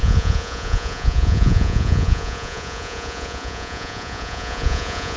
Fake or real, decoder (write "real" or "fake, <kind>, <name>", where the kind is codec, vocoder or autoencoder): fake, vocoder, Vocos